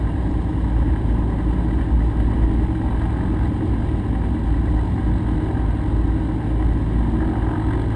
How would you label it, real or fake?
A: real